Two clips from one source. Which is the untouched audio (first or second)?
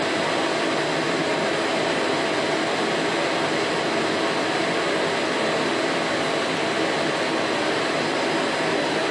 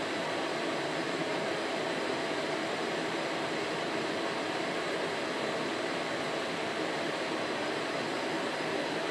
first